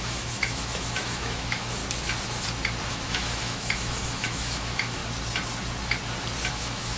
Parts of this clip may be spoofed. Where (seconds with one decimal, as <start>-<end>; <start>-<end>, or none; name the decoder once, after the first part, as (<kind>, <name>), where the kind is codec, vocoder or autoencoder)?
0.0-1.8 (autoencoder, DAC-VAE); 2.9-5.0; 6.5-7.0